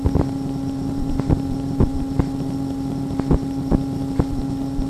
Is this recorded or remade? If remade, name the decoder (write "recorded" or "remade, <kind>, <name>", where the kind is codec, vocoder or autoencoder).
remade, vocoder, BigVGAN v2